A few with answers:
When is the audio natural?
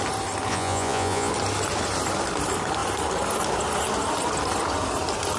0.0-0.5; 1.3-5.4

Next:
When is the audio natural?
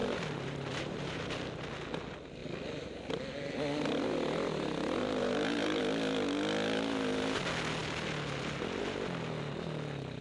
1.2-5.0; 5.8-10.2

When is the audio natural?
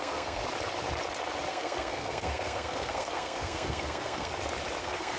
0.4-1.5; 4.3-4.8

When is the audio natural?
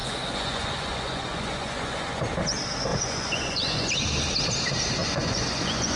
2.2-2.9; 3.9-5.0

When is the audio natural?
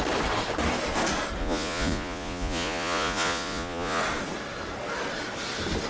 0.0-1.4; 4.0-5.9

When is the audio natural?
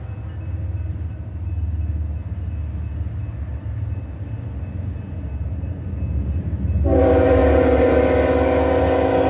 0.0-9.3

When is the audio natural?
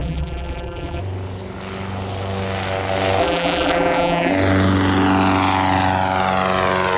1.0-3.2; 4.3-7.0